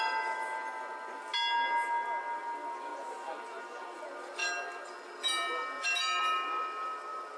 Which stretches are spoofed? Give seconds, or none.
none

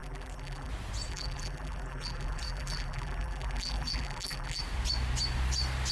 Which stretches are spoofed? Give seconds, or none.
0.0-0.7; 1.1-4.6

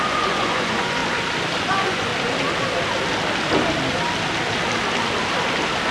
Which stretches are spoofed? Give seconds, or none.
0.0-1.0; 1.7-2.1

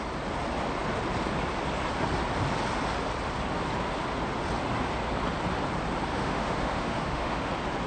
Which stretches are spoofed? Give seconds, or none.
6.1-7.5

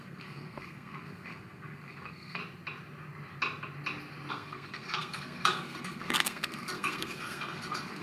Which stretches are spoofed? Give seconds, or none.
0.0-2.4; 4.3-8.0

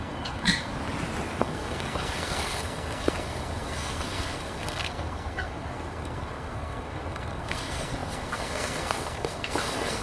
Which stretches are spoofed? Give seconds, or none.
0.0-0.7; 1.4-10.0